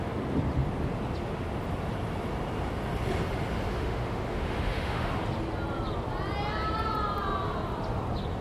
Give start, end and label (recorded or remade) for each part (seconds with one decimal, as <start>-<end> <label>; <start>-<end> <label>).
0.0-3.7 recorded; 3.7-5.1 remade; 5.1-8.4 recorded

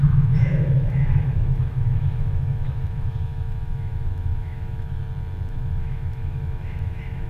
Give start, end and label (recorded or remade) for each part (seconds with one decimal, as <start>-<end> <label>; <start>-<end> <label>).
0.0-5.0 remade; 5.0-5.5 recorded; 5.5-7.3 remade